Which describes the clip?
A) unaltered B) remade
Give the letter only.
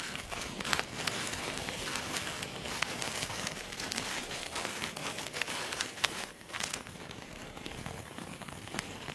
B